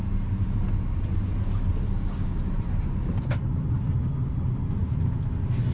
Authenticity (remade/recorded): recorded